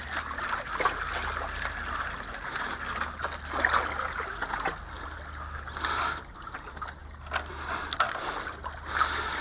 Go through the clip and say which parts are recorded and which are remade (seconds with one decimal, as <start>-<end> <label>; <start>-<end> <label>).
0.0-9.4 recorded